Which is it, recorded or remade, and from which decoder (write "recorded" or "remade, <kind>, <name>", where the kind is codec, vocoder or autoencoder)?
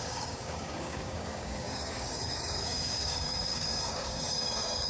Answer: remade, codec, DAC